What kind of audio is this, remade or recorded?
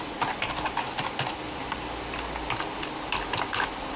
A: recorded